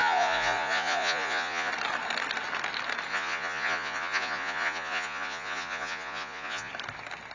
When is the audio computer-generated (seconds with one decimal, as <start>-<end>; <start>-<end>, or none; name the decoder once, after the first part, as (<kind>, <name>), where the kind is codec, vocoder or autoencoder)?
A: 0.0-1.7 (vocoder, Vocos); 3.1-6.7